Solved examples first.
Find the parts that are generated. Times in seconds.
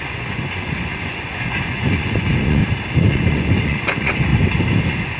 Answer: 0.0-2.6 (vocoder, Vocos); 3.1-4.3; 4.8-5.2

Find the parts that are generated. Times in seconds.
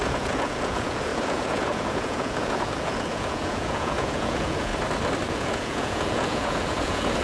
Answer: 0.0-4.7 (vocoder, Vocos); 5.3-7.2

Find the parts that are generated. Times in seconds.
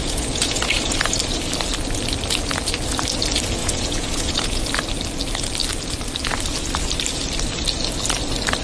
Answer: 0.0-1.2 (vocoder, Vocos); 3.6-4.7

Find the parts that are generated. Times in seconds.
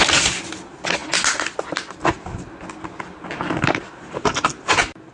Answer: none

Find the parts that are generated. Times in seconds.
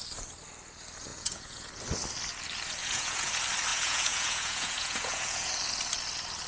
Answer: 1.1-1.7 (vocoder, Vocos); 2.8-3.3; 3.7-5.5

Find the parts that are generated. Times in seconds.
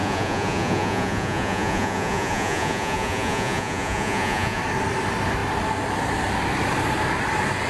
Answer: 0.0-4.6 (vocoder, Vocos)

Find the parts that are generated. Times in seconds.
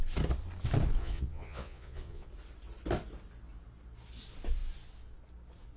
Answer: 1.0-2.3 (vocoder, Vocos)